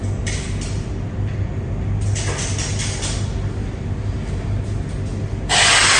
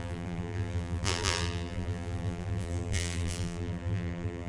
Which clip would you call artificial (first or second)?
second